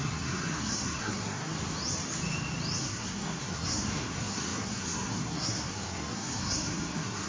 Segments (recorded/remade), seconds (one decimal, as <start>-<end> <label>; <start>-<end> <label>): 0.0-1.5 remade; 1.5-2.8 recorded; 2.8-7.3 remade